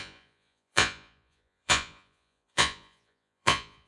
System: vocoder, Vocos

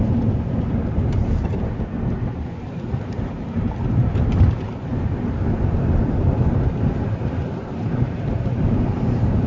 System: vocoder, BigVGAN v2